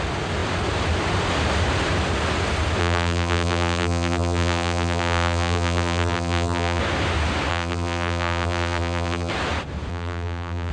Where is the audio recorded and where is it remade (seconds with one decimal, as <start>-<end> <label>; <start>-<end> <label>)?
0.0-2.8 recorded; 2.8-6.8 remade; 6.8-7.5 recorded; 7.5-9.3 remade; 9.3-9.9 recorded; 9.9-10.7 remade